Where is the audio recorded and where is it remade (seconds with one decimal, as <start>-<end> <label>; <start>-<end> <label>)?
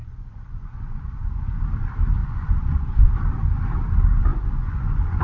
0.0-1.6 remade; 1.6-2.2 recorded; 2.2-3.1 remade; 3.1-4.3 recorded; 4.3-5.2 remade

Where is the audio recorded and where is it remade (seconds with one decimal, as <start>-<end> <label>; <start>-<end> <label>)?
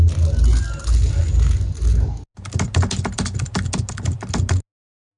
0.0-5.2 recorded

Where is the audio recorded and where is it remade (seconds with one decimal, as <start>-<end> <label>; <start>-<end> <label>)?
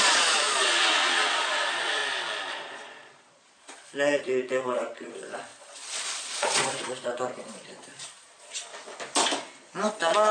0.0-2.0 remade; 2.0-2.5 recorded; 2.5-8.7 remade; 8.7-9.9 recorded; 9.9-10.3 remade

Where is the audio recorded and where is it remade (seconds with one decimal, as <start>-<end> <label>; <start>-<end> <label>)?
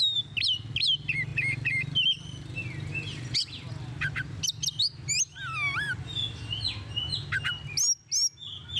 0.0-8.8 recorded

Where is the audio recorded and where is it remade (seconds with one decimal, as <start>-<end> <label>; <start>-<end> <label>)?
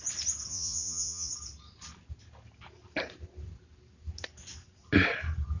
0.0-0.5 recorded; 0.5-1.3 remade; 1.3-5.6 recorded